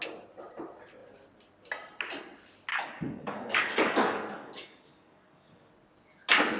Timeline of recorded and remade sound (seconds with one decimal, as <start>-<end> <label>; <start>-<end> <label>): 0.0-2.7 recorded; 2.7-5.7 remade; 5.7-6.6 recorded